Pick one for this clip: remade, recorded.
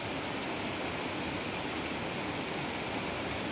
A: recorded